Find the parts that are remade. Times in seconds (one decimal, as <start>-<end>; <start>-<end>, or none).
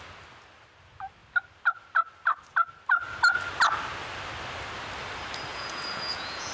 5.5-6.5